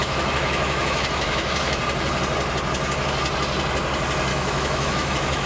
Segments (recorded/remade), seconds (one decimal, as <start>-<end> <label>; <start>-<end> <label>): 0.0-1.8 remade; 1.8-4.3 recorded; 4.3-5.5 remade